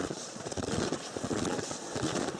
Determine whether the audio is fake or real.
fake